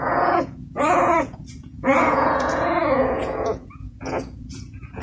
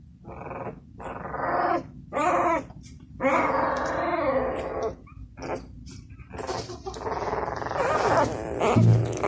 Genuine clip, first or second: second